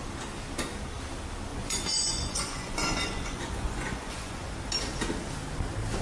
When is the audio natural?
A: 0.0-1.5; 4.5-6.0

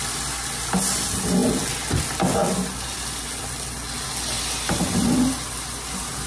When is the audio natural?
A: 0.0-6.3

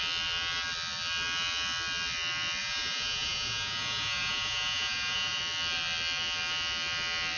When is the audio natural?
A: 0.0-2.6; 5.4-7.4

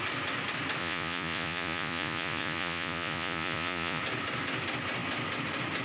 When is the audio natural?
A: 0.0-0.8; 4.0-5.8